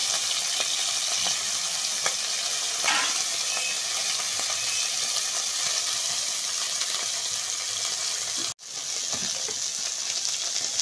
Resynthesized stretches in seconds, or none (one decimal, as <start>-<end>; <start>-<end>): none